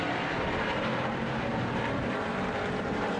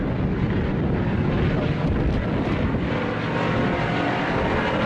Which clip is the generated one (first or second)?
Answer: first